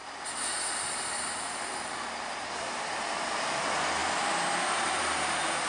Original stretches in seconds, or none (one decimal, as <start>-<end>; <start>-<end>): 0.0-5.7